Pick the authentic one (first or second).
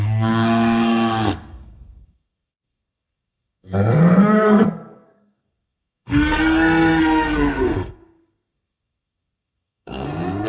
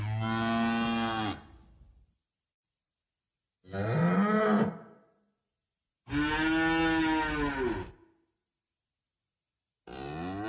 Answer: second